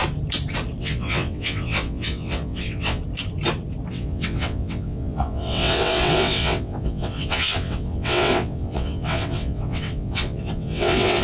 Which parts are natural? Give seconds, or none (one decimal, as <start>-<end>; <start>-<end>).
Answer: 0.0-0.8; 3.0-3.9